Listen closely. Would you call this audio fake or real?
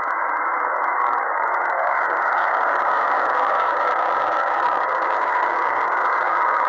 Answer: fake